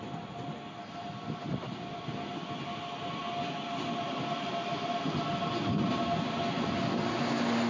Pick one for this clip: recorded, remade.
recorded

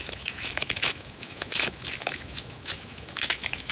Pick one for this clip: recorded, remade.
remade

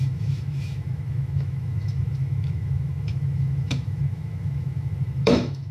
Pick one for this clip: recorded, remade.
remade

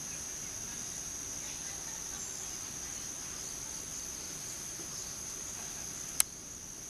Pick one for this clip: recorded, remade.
recorded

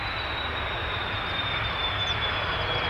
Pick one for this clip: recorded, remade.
recorded